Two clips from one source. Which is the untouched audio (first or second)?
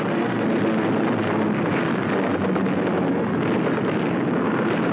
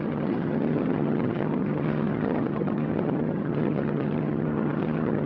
first